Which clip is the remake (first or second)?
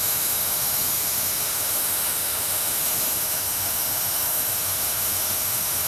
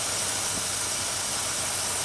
first